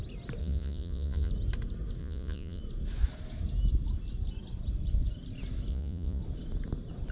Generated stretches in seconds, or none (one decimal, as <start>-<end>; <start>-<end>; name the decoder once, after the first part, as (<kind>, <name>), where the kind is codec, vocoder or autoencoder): 0.4-1.3 (vocoder, Vocos); 2.0-2.6; 5.7-6.2